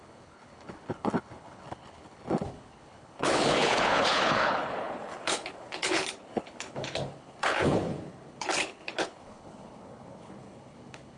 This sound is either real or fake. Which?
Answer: fake